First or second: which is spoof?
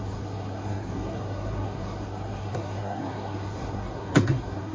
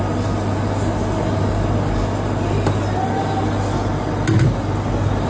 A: first